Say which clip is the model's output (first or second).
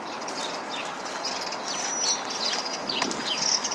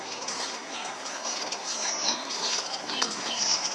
second